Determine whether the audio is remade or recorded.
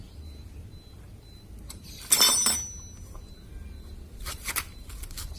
recorded